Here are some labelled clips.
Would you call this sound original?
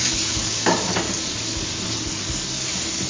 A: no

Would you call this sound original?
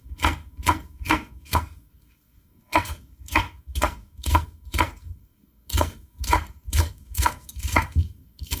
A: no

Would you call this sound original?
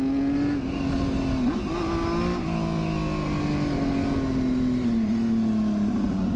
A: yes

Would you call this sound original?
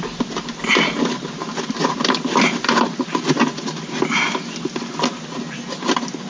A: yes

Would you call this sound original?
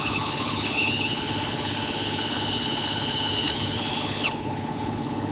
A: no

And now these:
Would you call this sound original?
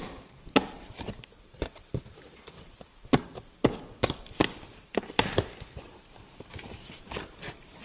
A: no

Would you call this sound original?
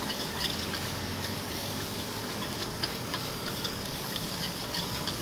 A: no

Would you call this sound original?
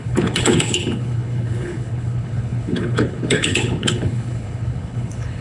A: no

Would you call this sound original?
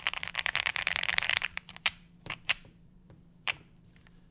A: no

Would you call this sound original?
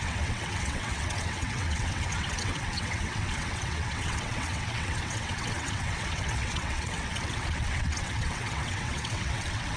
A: no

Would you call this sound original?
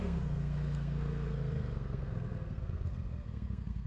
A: no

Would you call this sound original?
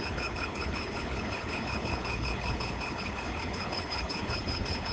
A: no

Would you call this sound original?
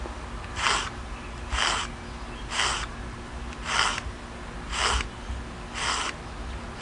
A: yes